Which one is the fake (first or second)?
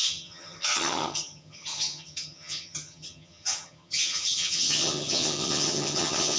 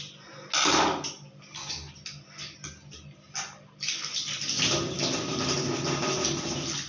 first